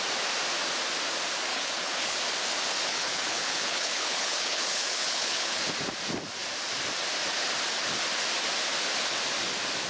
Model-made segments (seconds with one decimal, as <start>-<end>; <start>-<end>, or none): 1.5-2.2; 2.9-5.7